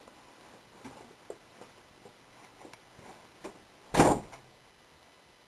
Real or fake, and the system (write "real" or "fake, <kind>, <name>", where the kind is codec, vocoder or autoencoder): real